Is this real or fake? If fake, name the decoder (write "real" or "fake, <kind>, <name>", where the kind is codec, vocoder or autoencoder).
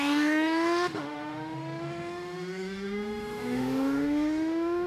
fake, autoencoder, DAC-VAE